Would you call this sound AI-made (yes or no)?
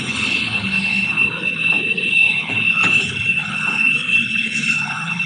yes